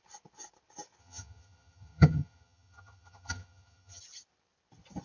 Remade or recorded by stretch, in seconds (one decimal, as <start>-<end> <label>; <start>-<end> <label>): 0.0-1.0 recorded; 1.0-4.0 remade; 4.0-5.0 recorded